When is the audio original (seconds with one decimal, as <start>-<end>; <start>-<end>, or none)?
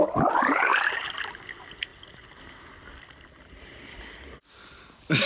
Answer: 0.0-5.3